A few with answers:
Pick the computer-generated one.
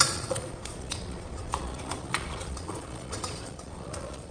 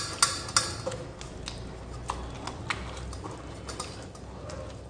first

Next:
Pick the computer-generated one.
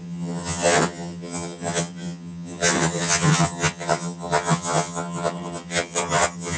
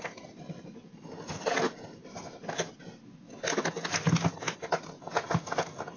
first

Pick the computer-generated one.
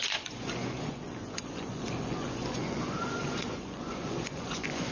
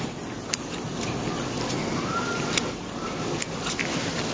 first